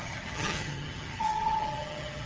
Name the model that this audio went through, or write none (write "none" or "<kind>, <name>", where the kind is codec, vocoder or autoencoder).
vocoder, HiFi-GAN